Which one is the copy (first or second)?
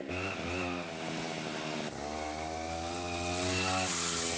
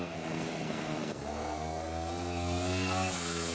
second